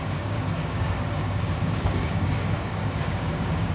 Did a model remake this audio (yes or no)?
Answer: yes